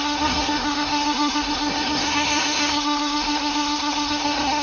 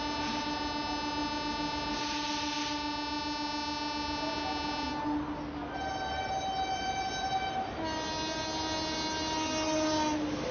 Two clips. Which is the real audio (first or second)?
second